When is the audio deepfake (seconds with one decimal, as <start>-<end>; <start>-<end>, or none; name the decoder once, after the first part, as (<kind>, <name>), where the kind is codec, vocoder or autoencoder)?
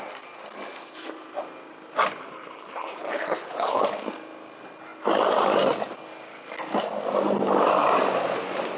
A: 2.2-3.8 (codec, HILCodec)